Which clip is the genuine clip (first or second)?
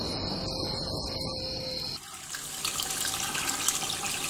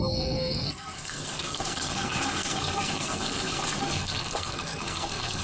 first